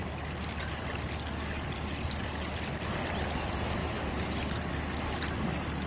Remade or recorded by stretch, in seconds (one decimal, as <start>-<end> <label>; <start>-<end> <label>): 0.0-3.8 recorded; 3.8-4.6 remade; 4.6-5.9 recorded